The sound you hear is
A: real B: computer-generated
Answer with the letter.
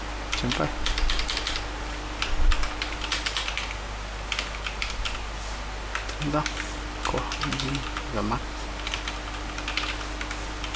A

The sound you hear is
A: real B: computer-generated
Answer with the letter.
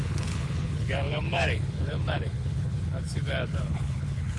B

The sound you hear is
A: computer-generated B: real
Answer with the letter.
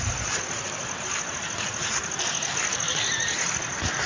B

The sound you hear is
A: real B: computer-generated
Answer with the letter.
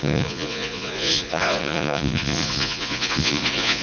B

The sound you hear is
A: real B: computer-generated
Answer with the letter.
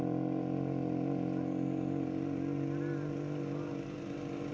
A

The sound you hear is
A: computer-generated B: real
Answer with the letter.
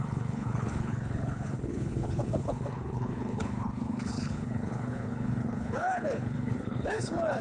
A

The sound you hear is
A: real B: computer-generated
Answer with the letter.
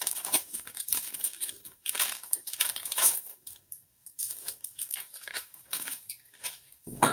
B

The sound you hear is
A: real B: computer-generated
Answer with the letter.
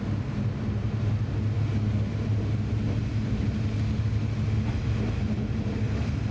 A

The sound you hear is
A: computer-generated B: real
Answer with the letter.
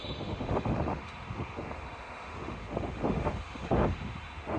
A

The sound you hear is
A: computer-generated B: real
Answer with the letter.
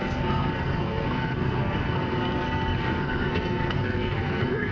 A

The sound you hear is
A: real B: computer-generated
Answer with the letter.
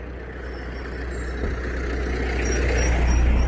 A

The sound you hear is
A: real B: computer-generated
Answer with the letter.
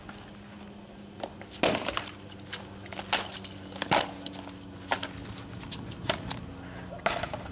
A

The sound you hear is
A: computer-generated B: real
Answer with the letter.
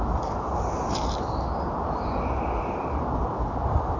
B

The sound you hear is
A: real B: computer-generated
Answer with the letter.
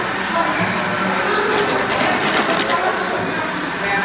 A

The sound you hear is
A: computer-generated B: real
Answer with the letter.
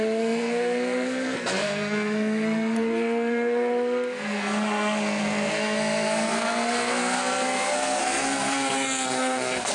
A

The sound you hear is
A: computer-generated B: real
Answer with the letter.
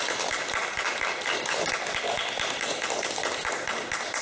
B